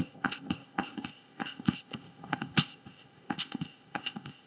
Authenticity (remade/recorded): remade